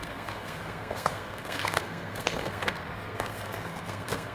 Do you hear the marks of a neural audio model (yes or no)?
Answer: yes